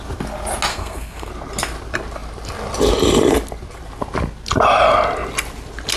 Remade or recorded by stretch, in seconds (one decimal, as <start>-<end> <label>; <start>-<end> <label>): 0.0-0.7 recorded; 0.7-1.3 remade; 1.3-6.0 recorded